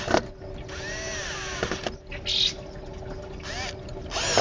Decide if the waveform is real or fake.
real